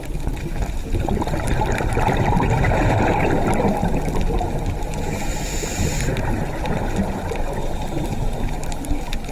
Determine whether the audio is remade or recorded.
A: recorded